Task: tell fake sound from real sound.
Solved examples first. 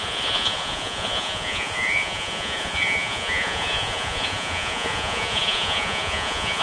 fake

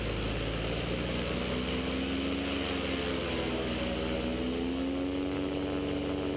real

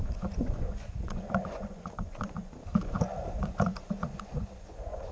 fake